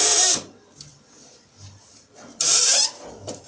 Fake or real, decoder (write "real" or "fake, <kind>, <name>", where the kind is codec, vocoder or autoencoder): fake, vocoder, BigVGAN v2